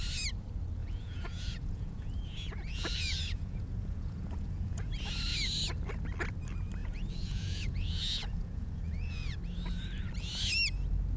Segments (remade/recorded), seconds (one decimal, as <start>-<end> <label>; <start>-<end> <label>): 0.0-0.8 recorded; 0.8-4.9 remade; 4.9-6.8 recorded; 6.8-9.4 remade; 9.4-11.2 recorded

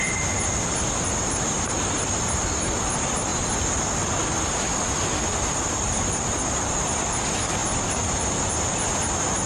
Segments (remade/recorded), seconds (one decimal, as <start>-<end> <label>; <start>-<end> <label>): 0.0-9.5 recorded

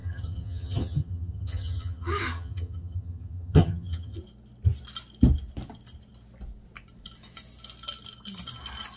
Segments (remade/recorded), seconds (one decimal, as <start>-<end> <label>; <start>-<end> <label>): 0.0-4.2 remade; 4.2-9.0 recorded

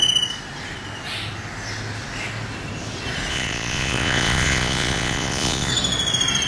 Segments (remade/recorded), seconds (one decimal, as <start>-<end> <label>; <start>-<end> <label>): 0.0-3.3 recorded; 3.3-5.7 remade; 5.7-6.5 recorded